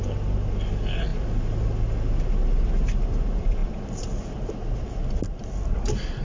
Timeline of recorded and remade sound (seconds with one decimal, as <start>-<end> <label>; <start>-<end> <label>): 0.0-6.2 recorded